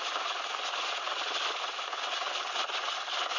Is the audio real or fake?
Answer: real